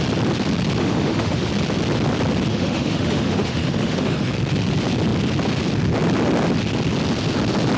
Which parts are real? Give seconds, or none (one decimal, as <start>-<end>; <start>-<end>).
0.0-0.8; 1.5-2.5; 4.3-7.8